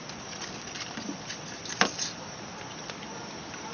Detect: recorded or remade recorded